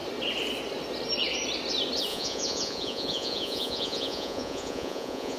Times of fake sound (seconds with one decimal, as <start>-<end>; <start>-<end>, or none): 2.1-5.4